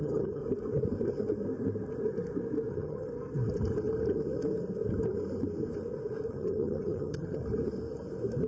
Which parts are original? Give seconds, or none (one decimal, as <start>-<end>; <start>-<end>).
0.4-2.7; 3.1-6.3; 7.4-8.5